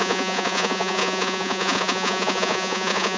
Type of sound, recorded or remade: remade